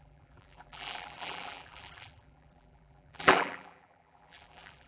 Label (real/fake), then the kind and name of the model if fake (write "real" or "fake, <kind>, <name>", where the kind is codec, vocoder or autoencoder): fake, vocoder, BigVGAN v2